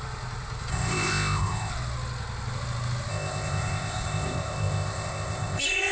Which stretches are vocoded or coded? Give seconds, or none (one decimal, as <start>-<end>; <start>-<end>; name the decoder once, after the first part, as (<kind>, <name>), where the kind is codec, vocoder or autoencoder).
0.7-1.7 (codec, ZipCodec); 3.1-5.9